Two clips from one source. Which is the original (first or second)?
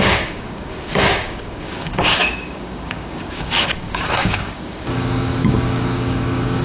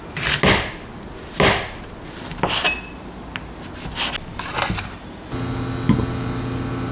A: second